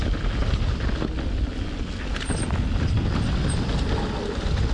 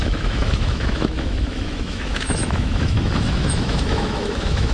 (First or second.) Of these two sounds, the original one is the first